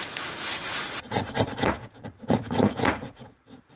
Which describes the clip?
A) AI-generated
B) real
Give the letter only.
A